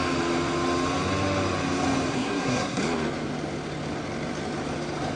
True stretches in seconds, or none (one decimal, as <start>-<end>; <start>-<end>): 0.0-2.1; 2.8-5.2